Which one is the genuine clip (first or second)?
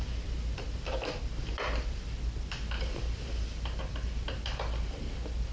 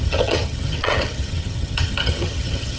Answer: first